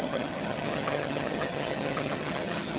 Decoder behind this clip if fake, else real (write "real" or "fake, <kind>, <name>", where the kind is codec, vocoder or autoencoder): fake, vocoder, HiFi-GAN